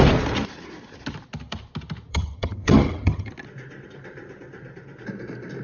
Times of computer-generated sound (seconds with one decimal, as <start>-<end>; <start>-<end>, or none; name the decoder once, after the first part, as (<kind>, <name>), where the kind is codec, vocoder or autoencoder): 2.1-3.3 (vocoder, HiFi-GAN)